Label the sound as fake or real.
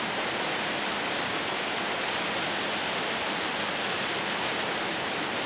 real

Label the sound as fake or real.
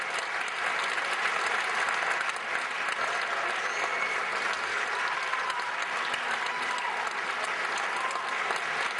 real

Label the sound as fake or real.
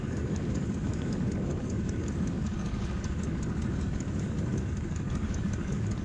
fake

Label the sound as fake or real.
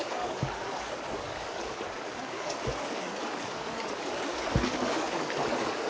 fake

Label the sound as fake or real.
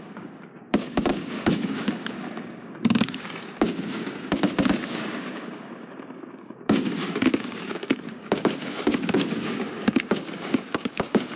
fake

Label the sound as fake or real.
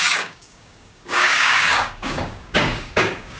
fake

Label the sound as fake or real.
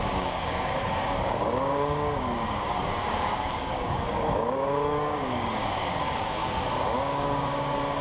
fake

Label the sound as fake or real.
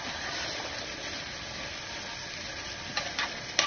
real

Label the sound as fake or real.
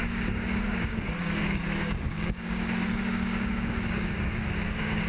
fake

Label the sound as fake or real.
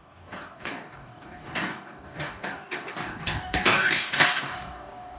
fake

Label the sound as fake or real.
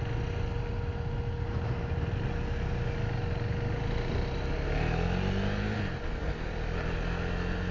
real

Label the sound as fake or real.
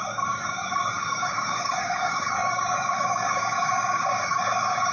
fake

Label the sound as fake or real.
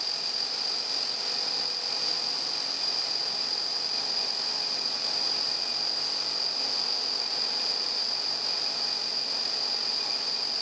real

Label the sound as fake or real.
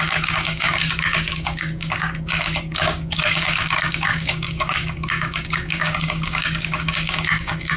fake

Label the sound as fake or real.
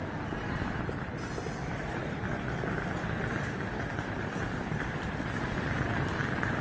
real